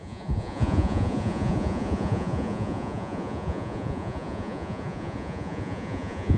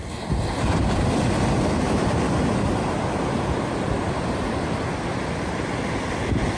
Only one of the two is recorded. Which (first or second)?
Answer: second